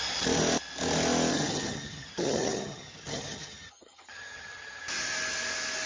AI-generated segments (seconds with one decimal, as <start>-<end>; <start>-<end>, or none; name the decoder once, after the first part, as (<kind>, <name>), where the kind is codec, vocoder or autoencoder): 1.3-4.8 (vocoder, HiFi-GAN)